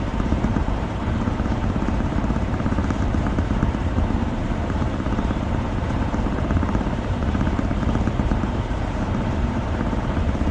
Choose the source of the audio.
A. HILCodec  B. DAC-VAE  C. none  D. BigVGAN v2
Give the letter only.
D